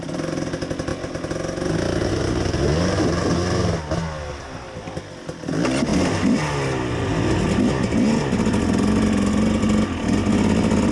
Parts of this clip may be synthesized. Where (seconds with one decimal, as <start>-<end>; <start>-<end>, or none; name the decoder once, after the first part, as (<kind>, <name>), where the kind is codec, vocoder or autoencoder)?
none